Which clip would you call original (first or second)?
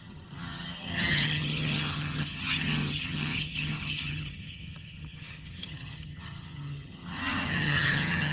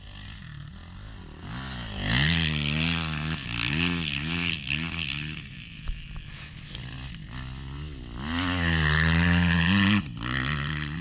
second